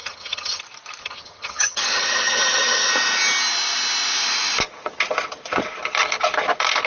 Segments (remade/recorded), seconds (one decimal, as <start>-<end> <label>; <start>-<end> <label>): 0.0-0.6 remade; 0.6-1.0 recorded; 1.0-2.9 remade; 2.9-6.9 recorded